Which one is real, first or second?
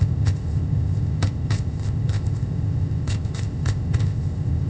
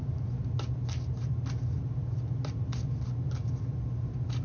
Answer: second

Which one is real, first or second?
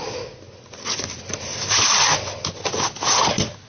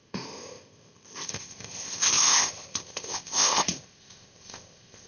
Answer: first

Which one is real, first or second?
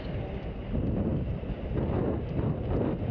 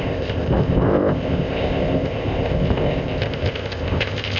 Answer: first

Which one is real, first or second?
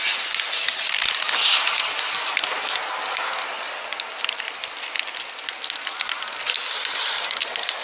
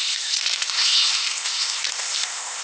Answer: first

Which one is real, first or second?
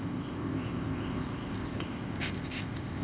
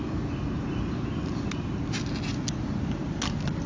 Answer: second